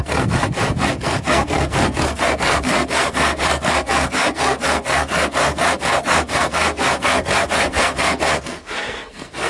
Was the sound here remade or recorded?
remade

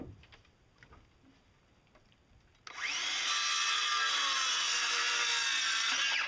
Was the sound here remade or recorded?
recorded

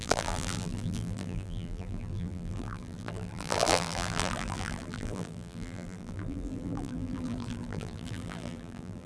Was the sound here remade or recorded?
remade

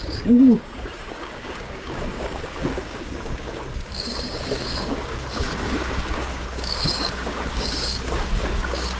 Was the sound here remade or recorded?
remade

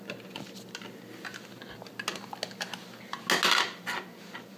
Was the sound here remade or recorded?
recorded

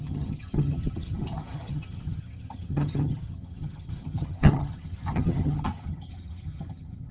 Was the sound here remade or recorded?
remade